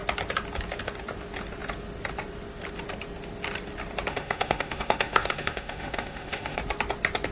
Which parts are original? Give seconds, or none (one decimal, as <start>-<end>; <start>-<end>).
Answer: 0.0-4.1; 6.6-7.3